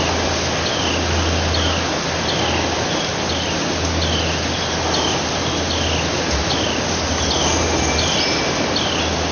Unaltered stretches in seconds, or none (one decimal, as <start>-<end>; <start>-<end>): 0.0-9.3